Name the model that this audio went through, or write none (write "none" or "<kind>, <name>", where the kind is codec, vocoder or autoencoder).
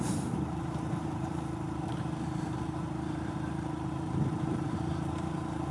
vocoder, BigVGAN v2